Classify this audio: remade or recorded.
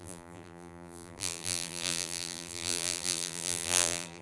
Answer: remade